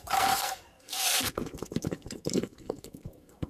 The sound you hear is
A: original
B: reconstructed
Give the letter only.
B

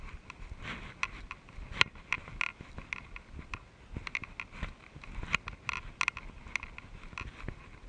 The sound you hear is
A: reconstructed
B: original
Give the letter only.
B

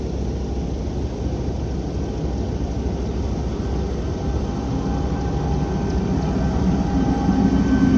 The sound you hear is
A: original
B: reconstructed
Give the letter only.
A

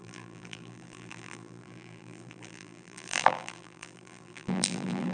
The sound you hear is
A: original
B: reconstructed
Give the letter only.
B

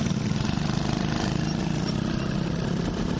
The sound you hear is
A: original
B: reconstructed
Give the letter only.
A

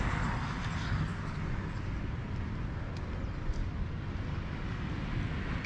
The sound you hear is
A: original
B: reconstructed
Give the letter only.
A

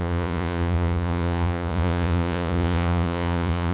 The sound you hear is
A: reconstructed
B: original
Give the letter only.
A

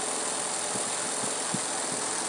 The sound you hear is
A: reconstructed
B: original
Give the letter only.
B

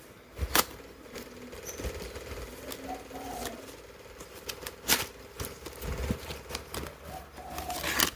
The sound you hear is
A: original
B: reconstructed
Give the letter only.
A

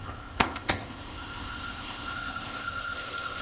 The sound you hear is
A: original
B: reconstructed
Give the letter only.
B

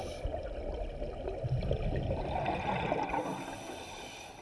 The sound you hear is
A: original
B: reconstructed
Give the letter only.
A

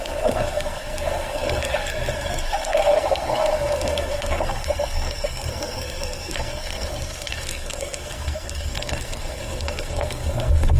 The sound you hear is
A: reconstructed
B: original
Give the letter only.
A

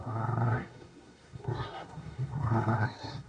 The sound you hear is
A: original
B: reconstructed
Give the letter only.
B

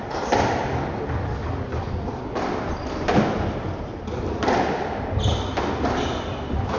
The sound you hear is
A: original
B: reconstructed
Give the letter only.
A